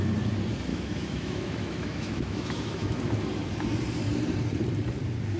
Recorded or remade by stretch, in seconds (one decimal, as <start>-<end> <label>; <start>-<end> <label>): 0.0-0.7 recorded; 0.7-3.0 remade; 3.0-5.4 recorded